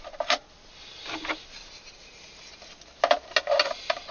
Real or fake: real